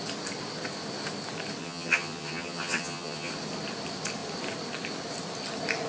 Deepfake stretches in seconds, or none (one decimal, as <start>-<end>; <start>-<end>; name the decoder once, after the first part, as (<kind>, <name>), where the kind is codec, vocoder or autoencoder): 1.6-3.3 (vocoder, HiFi-GAN)